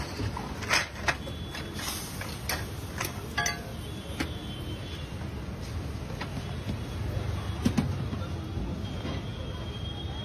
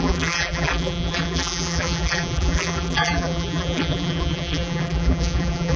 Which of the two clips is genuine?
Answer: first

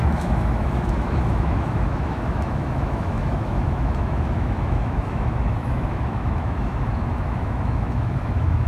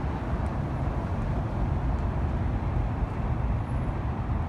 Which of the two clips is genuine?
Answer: second